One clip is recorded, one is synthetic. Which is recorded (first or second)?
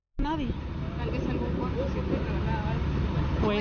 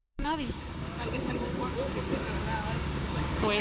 first